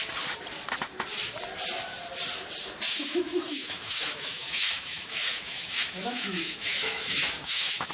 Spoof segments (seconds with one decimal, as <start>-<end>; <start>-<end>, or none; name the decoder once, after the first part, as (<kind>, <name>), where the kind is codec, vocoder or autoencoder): 2.9-7.9 (autoencoder, DAC-VAE)